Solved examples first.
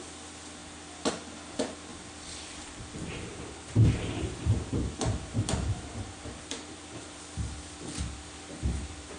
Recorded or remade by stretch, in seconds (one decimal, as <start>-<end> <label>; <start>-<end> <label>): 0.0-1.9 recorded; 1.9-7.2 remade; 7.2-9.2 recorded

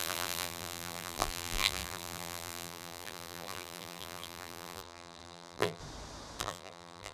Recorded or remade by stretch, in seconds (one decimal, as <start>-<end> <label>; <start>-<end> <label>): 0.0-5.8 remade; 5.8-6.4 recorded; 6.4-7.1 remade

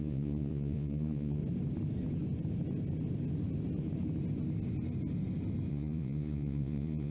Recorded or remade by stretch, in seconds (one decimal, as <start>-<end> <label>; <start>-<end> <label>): 0.0-1.4 remade; 1.4-5.7 recorded; 5.7-7.1 remade

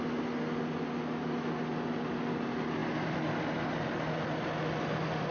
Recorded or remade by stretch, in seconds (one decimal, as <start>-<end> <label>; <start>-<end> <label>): 0.0-5.3 recorded

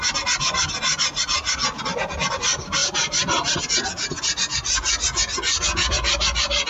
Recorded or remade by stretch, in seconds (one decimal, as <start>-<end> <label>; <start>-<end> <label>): 0.0-6.7 recorded

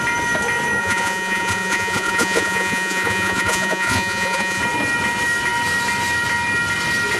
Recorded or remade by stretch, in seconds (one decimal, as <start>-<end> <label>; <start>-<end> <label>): 0.0-0.8 recorded; 0.8-4.6 remade; 4.6-7.2 recorded

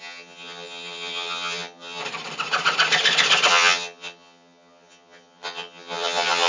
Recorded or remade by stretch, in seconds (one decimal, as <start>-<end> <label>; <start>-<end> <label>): 0.0-2.0 remade; 2.0-3.5 recorded; 3.5-6.5 remade